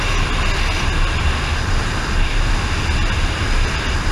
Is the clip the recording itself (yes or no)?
yes